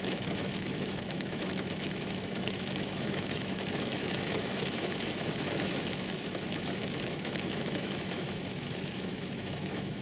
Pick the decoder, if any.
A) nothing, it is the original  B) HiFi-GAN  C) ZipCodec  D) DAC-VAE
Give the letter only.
D